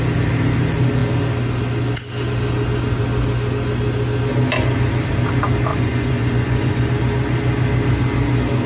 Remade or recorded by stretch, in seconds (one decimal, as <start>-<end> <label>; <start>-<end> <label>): 0.0-5.7 recorded; 5.7-6.9 remade; 6.9-8.7 recorded